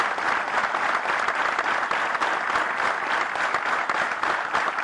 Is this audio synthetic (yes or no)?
no